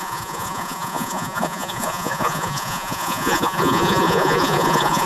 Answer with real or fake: fake